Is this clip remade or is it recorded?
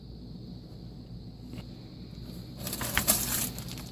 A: recorded